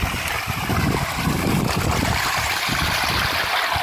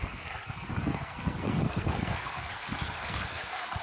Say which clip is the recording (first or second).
first